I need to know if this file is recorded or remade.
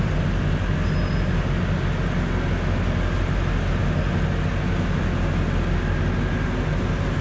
recorded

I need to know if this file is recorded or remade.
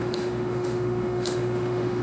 remade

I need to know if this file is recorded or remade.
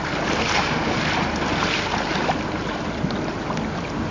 recorded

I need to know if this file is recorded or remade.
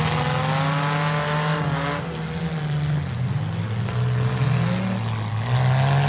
recorded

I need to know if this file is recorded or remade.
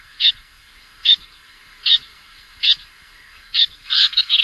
remade